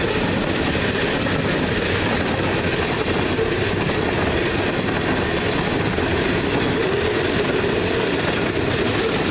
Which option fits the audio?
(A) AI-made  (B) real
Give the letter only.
B